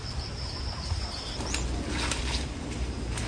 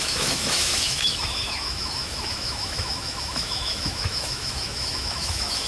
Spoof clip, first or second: second